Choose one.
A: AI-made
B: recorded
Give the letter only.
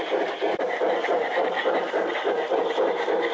B